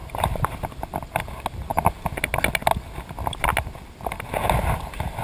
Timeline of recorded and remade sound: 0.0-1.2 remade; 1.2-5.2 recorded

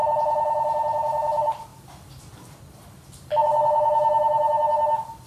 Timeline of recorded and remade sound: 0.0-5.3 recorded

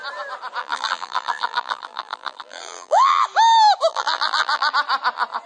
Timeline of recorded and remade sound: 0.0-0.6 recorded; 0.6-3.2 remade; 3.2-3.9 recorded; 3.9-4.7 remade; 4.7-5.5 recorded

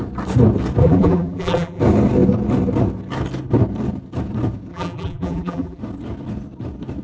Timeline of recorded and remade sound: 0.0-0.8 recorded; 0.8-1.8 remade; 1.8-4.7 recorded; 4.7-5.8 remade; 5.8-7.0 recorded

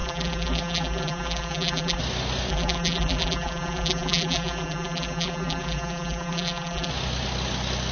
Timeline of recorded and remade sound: 0.0-2.0 remade; 2.0-2.5 recorded; 2.5-6.9 remade; 6.9-7.9 recorded

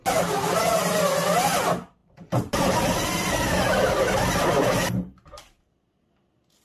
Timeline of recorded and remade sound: 0.0-2.0 recorded; 2.0-3.8 remade; 3.8-6.6 recorded